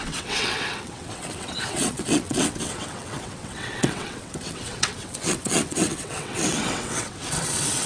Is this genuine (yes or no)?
no